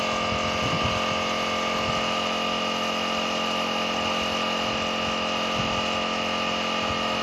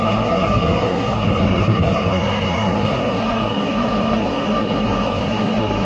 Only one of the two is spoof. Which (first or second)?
second